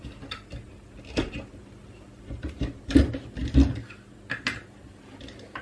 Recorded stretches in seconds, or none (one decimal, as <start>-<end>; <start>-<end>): 0.0-1.6; 3.0-5.6

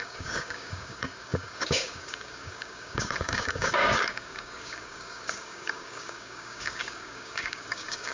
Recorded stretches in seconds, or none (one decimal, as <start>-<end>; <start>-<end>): none

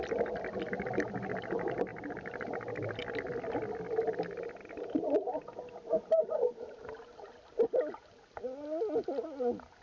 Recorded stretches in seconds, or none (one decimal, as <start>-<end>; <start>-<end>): 0.0-9.8

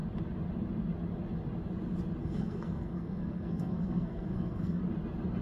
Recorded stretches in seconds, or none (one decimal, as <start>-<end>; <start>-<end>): 0.0-2.2; 4.8-5.4